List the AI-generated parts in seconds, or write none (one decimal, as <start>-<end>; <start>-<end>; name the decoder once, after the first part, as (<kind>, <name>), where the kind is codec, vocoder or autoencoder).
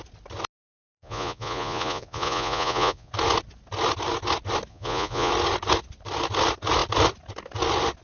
0.7-3.1 (vocoder, Vocos); 4.7-5.3